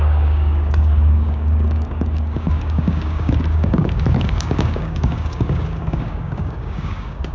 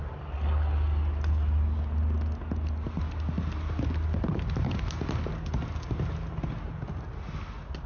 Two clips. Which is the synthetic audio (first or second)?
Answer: first